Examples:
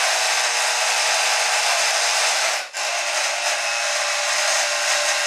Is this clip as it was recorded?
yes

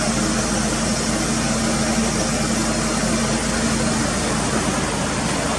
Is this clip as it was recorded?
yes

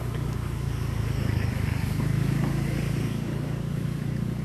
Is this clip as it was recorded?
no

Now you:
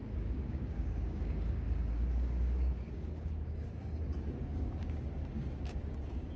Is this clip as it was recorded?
no